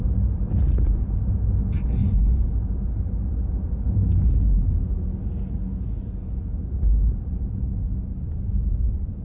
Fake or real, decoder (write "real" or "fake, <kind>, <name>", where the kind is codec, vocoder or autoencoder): real